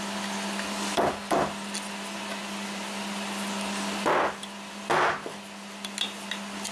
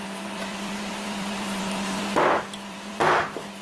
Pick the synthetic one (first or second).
second